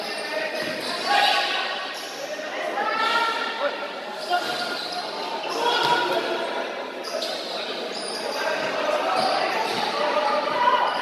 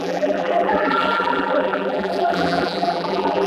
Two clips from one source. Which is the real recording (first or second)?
first